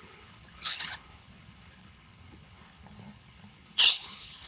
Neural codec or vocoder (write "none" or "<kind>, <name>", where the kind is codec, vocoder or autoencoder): codec, HILCodec